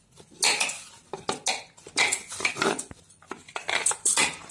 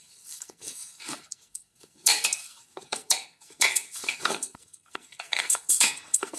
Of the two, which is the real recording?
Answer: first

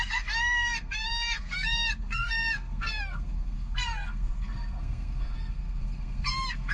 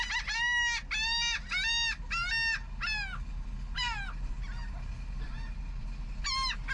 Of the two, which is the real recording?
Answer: second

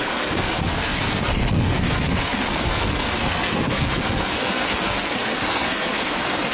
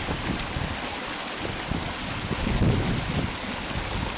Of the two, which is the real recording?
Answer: second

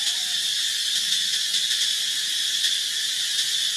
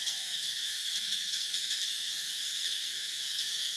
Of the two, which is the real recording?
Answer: first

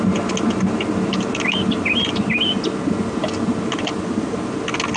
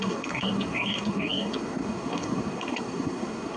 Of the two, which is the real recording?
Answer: first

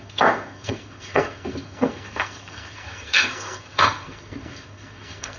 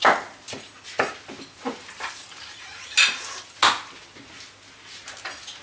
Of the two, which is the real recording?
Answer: second